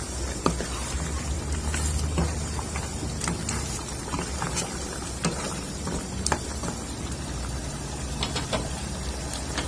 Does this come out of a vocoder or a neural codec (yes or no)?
yes